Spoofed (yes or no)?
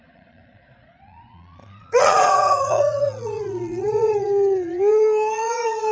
yes